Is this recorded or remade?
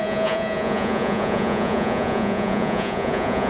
remade